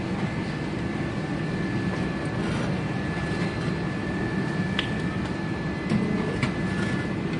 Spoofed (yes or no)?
no